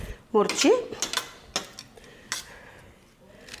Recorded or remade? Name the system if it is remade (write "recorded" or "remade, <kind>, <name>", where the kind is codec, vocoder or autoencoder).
recorded